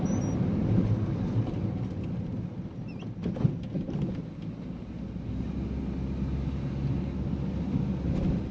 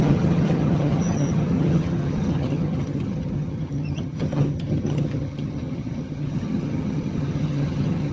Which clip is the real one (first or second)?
first